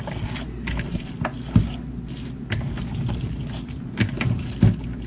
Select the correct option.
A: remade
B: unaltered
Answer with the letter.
B